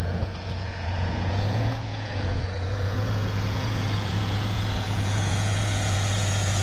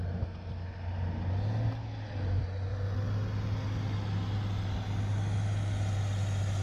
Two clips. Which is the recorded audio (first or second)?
second